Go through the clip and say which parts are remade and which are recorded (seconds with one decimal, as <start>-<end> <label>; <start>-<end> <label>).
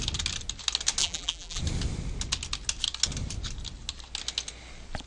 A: 0.0-1.0 recorded; 1.0-1.6 remade; 1.6-5.1 recorded